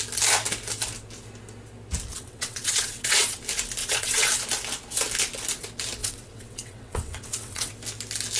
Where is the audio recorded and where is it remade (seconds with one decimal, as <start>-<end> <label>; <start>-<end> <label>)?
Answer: 0.0-2.1 recorded; 2.1-3.4 remade; 3.4-3.8 recorded; 3.8-4.4 remade; 4.4-6.0 recorded; 6.0-7.7 remade; 7.7-8.4 recorded